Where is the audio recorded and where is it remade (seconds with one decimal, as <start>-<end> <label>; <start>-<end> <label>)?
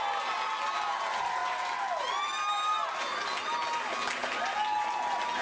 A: 0.0-5.4 recorded